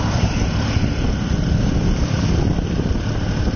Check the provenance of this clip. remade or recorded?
recorded